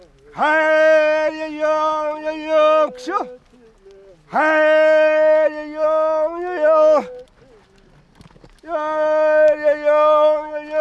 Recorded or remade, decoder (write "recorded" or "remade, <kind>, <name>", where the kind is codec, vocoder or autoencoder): recorded